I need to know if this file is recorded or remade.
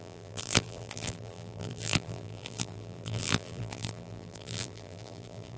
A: remade